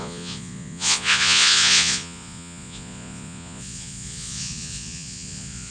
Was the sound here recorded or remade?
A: remade